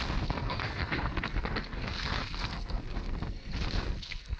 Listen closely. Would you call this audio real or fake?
fake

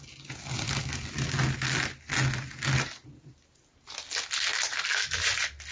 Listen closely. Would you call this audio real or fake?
real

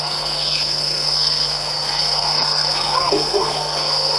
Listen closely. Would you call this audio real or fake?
fake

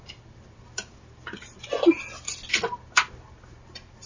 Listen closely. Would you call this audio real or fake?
real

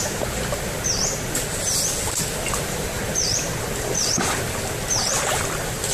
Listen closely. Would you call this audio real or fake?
real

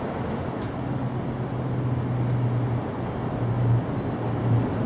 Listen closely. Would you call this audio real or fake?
real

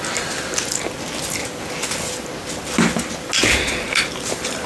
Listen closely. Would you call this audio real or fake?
real